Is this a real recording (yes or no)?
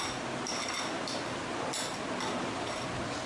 yes